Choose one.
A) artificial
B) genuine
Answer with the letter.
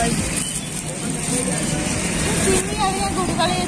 B